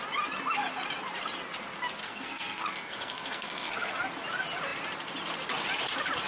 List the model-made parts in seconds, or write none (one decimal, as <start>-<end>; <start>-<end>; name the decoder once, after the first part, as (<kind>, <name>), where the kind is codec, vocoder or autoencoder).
2.0-4.0 (codec, SNAC)